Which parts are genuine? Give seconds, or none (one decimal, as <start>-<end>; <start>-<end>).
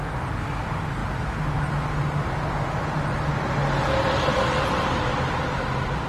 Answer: 0.0-1.0; 1.6-6.1